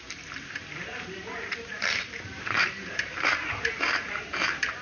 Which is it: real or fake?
fake